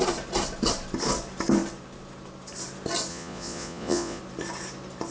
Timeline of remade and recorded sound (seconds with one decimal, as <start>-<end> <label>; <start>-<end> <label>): 0.0-3.1 recorded; 3.1-4.2 remade; 4.2-5.1 recorded